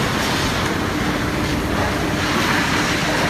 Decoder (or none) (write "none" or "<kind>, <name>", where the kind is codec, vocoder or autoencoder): none